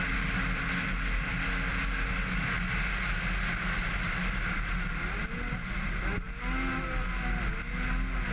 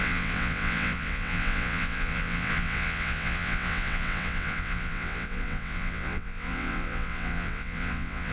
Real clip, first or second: first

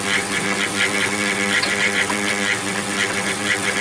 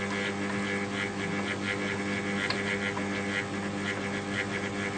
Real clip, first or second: second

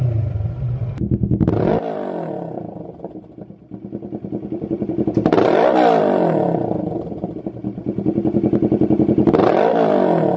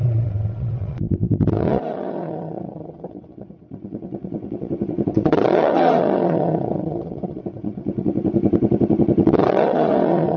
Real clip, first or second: first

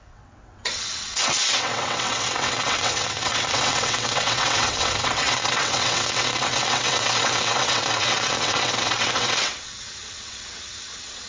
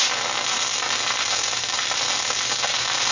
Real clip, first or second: second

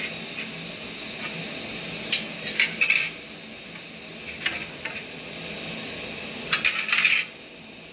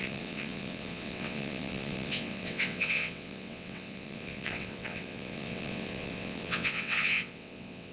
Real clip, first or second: first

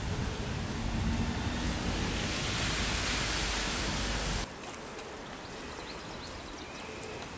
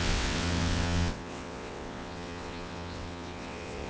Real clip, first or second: first